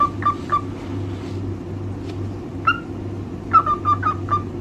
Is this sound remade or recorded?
remade